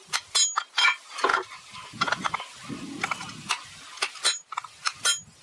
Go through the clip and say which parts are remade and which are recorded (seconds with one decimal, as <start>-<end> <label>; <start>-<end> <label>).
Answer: 0.0-5.4 recorded